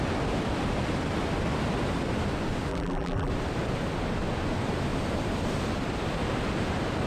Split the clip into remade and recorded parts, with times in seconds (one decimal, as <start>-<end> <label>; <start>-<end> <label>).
0.0-2.7 recorded; 2.7-3.3 remade; 3.3-7.1 recorded